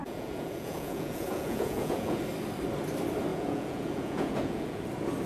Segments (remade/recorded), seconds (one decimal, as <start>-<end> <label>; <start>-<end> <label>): 0.0-2.2 remade; 2.2-3.3 recorded; 3.3-4.8 remade; 4.8-5.3 recorded